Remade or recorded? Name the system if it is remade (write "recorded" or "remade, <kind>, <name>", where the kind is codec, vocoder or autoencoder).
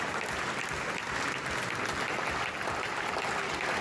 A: recorded